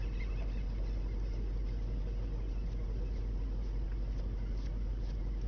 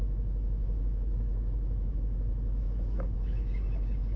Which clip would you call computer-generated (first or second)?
second